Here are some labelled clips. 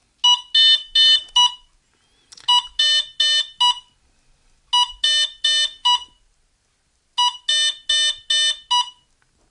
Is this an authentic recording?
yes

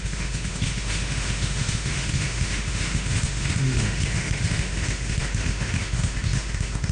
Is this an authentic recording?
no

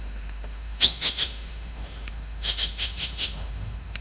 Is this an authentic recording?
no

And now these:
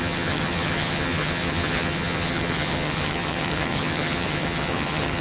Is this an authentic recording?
no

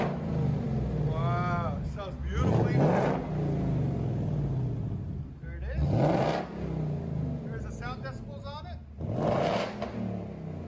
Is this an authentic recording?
yes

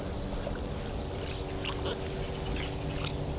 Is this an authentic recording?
yes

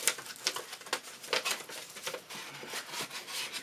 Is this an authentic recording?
yes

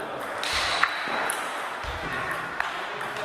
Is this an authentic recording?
yes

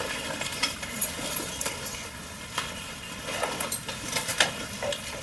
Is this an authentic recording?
no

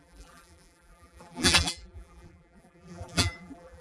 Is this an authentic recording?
no